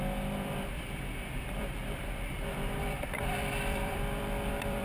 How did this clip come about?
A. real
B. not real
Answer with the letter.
B